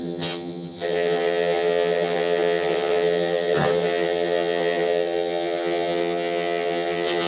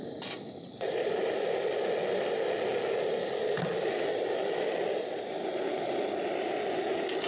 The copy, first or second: first